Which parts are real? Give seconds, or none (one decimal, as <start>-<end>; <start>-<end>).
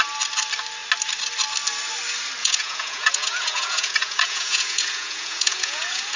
0.0-2.4